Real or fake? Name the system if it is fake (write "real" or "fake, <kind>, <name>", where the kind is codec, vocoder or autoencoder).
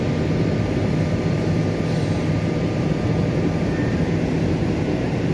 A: fake, vocoder, BigVGAN v2